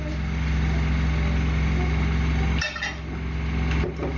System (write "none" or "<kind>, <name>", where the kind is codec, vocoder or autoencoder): none